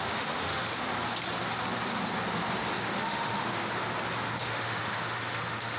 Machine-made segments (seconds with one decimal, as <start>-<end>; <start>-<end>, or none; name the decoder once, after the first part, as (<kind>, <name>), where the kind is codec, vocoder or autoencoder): 0.0-0.9 (autoencoder, DAC-VAE); 2.7-3.6; 4.4-5.8

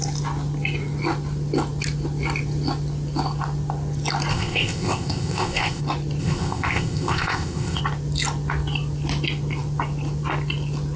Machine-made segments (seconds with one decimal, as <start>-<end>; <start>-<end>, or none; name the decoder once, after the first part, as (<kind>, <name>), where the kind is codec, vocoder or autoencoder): 4.3-5.8 (codec, ZipCodec); 6.2-7.8

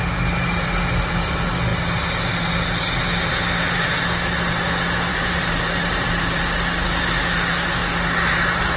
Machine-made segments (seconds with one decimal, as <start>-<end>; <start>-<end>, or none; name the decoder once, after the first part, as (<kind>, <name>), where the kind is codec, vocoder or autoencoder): 5.1-6.4 (vocoder, BigVGAN v2)

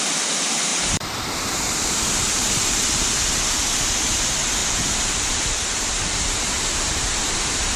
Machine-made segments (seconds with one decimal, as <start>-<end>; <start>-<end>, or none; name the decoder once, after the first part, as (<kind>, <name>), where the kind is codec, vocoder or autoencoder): 0.7-3.5 (vocoder, BigVGAN v2); 4.6-7.8

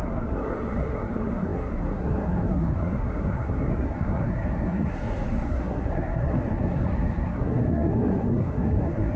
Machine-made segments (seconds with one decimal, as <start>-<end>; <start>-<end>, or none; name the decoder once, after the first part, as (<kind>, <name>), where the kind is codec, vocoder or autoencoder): 0.0-9.2 (codec, SNAC)

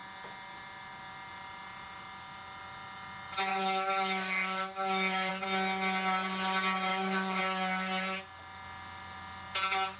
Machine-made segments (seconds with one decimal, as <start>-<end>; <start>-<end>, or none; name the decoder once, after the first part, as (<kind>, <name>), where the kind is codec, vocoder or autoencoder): 3.5-5.3 (autoencoder, DAC-VAE); 6.9-7.4

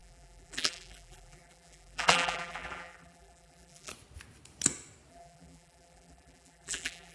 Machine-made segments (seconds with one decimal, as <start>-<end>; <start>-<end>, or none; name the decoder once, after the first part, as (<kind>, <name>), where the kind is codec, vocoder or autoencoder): 0.0-3.9 (vocoder, BigVGAN v2); 5.1-7.1